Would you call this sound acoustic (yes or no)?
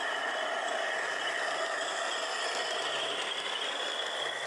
yes